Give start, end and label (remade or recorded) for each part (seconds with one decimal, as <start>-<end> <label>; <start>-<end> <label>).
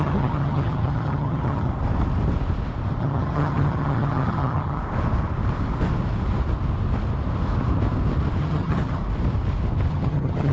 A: 0.0-1.7 remade; 1.7-3.0 recorded; 3.0-4.8 remade; 4.8-8.4 recorded; 8.4-9.0 remade; 9.0-9.9 recorded; 9.9-10.5 remade